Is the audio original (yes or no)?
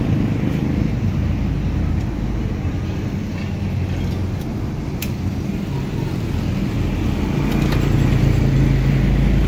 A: yes